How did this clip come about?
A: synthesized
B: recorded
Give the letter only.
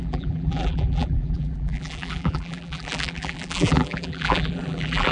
A